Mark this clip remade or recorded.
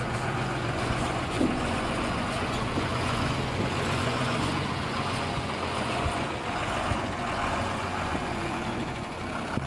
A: remade